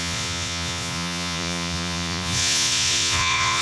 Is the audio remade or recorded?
remade